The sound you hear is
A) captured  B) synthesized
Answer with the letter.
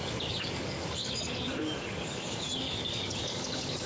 B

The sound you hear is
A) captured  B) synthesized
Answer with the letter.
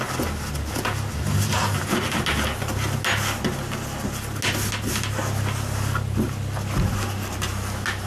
A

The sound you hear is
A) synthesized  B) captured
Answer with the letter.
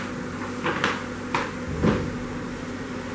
B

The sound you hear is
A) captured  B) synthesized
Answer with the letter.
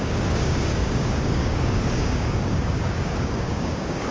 B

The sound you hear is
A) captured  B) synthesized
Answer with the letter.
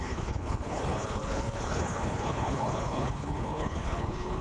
B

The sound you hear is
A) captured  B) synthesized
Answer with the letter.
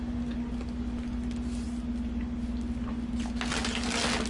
A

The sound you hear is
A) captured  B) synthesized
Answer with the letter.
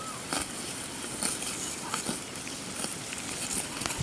A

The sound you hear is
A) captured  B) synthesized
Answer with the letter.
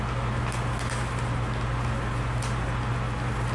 A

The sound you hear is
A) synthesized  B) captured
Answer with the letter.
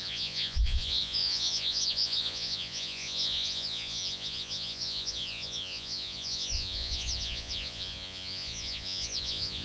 A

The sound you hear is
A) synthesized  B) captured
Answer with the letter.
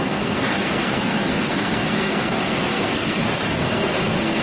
A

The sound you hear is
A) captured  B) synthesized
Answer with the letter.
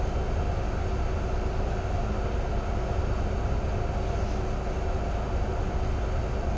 A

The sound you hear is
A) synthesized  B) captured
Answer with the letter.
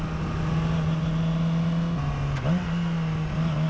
B